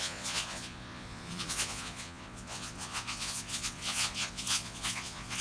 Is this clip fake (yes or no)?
yes